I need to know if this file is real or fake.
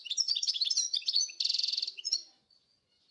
fake